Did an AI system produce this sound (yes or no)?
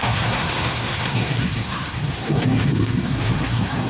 yes